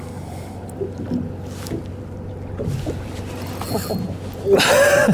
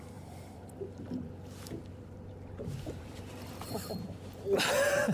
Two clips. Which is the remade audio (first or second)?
second